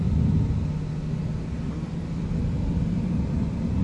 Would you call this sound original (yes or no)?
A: yes